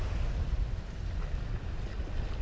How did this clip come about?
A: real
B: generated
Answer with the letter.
A